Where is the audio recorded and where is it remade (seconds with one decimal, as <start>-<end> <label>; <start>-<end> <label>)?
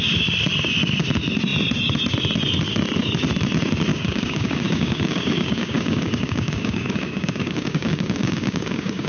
0.0-3.9 recorded; 3.9-9.1 remade